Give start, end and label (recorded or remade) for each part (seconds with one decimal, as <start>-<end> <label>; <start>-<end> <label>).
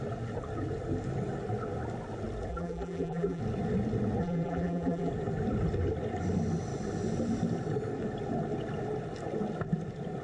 0.0-2.5 recorded; 2.5-3.4 remade; 3.4-4.2 recorded; 4.2-5.1 remade; 5.1-10.2 recorded